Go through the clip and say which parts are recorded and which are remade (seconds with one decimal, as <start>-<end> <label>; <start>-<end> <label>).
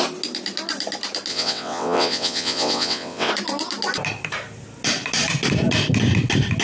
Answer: 0.0-1.3 recorded; 1.3-3.3 remade; 3.3-6.6 recorded